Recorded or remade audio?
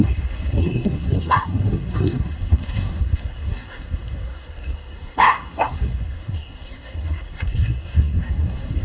remade